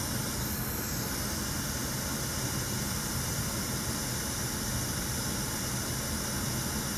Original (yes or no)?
yes